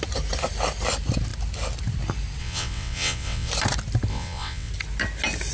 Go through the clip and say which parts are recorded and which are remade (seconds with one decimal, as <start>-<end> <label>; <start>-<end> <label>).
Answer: 0.0-2.4 recorded; 2.4-3.5 remade; 3.5-4.1 recorded; 4.1-4.7 remade; 4.7-5.5 recorded